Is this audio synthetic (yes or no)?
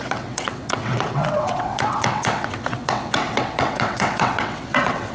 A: yes